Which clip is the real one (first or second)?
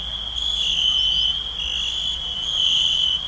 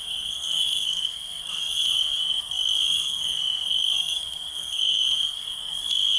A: first